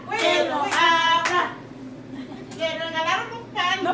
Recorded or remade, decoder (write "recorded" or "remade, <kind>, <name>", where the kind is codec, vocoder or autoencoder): recorded